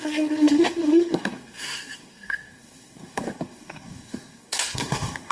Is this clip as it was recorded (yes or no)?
no